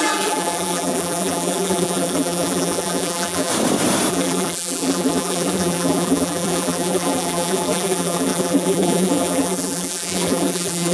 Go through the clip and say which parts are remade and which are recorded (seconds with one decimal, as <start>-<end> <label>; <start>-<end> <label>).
0.0-3.5 remade; 3.5-4.1 recorded; 4.1-10.9 remade